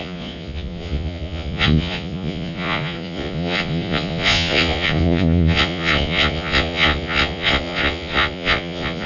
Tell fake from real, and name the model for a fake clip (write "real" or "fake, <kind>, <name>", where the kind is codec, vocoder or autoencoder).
fake, vocoder, Vocos